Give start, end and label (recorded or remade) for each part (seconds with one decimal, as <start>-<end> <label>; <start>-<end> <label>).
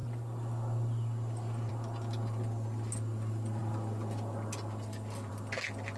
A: 0.0-6.0 recorded